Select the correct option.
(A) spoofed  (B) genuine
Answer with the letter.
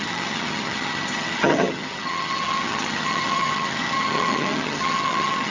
A